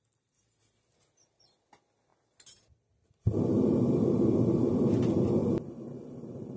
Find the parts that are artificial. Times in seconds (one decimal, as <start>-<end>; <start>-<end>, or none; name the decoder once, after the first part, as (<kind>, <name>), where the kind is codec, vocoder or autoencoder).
5.4-6.6 (vocoder, BigVGAN v2)